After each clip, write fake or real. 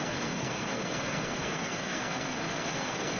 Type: fake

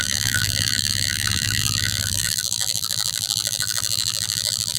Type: fake